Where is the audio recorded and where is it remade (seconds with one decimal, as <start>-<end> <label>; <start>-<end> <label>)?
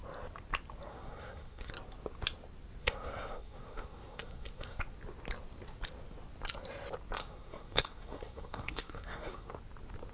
0.0-0.9 recorded; 0.9-1.7 remade; 1.7-2.8 recorded; 2.8-4.8 remade; 4.8-7.2 recorded; 7.2-9.5 remade; 9.5-10.1 recorded